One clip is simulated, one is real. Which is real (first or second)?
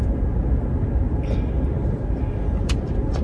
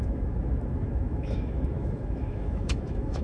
first